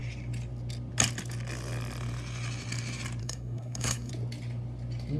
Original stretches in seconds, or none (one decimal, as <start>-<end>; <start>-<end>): 0.0-3.2; 4.1-5.2